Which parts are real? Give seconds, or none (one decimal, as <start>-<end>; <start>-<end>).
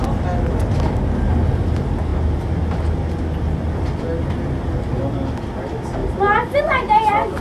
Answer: 0.0-7.4